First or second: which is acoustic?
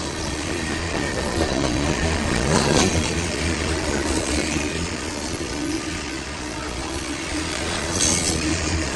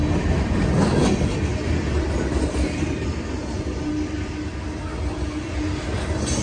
second